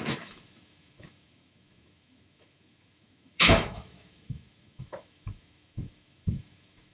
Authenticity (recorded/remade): remade